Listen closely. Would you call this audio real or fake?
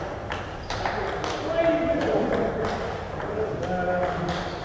real